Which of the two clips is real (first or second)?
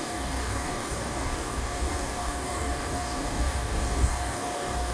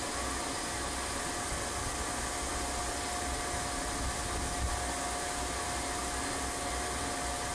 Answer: second